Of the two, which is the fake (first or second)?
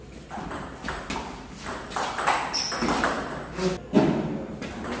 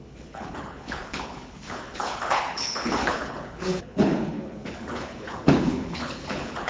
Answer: second